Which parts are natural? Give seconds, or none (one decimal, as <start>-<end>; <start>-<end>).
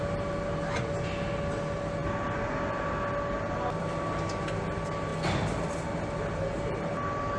0.0-7.4